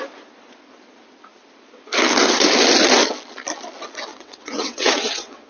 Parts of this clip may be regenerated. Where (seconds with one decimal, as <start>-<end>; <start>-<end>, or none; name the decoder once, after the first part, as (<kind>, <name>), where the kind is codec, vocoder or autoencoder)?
4.1-5.5 (vocoder, WaveNeXt)